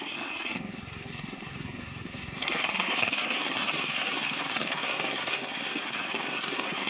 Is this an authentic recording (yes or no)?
no